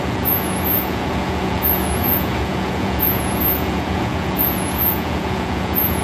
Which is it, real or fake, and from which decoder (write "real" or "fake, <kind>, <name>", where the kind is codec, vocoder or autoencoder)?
fake, vocoder, Vocos